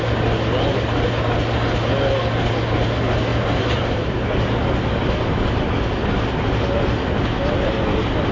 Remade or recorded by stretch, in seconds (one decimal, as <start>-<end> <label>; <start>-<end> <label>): 0.0-3.3 recorded; 3.3-4.2 remade; 4.2-8.3 recorded